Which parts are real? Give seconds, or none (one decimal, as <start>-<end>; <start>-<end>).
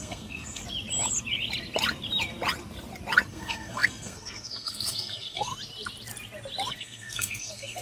0.6-3.3; 5.5-6.7